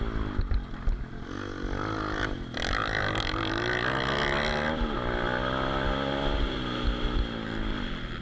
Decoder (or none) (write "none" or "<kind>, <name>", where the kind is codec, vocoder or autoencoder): none